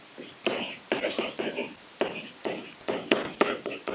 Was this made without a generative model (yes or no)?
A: yes